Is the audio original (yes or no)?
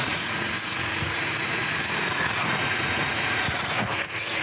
no